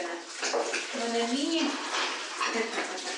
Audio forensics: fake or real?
real